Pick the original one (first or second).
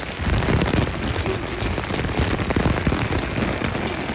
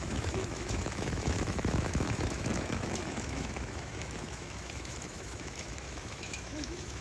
first